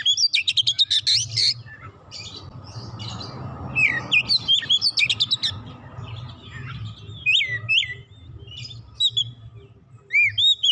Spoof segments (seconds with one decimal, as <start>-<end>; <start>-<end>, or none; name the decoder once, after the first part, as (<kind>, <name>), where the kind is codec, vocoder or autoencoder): 1.4-2.4 (vocoder, BigVGAN v2)